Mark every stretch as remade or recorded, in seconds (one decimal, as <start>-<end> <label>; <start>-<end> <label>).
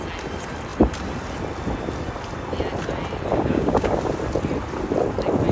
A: 0.0-3.3 recorded; 3.3-4.0 remade; 4.0-5.5 recorded